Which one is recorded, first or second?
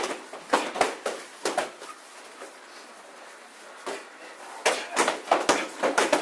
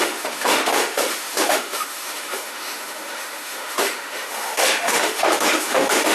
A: first